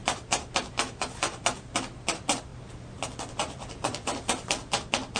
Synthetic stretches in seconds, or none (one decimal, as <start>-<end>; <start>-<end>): 0.0-2.5; 3.3-5.2